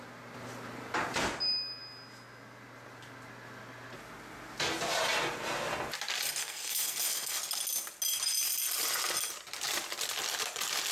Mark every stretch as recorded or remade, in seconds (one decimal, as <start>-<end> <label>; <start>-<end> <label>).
0.0-6.4 recorded; 6.4-7.4 remade; 7.4-10.9 recorded